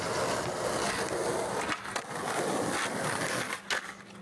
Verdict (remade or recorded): recorded